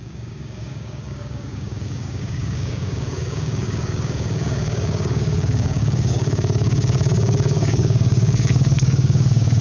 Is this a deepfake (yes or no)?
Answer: yes